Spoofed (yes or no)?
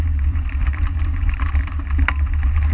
yes